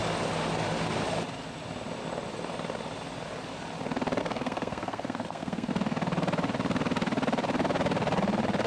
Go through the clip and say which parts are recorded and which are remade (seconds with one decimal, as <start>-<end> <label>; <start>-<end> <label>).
0.0-4.2 recorded; 4.2-5.7 remade; 5.7-8.7 recorded